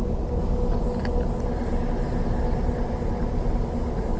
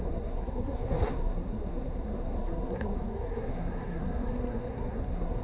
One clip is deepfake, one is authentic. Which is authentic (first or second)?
first